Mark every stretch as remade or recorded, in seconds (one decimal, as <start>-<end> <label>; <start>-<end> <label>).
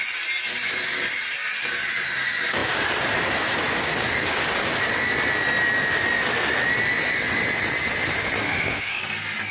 0.0-8.4 recorded; 8.4-9.0 remade; 9.0-9.5 recorded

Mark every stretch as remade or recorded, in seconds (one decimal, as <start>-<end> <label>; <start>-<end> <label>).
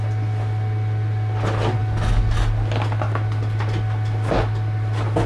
0.0-5.3 recorded